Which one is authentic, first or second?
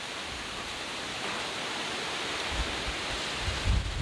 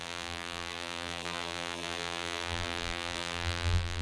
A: first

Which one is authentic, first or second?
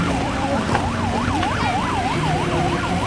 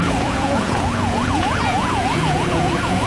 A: first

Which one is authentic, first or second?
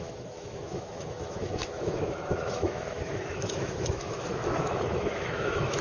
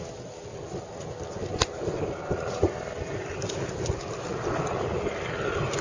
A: second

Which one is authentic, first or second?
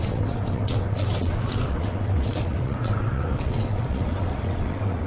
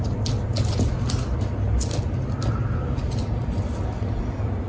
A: second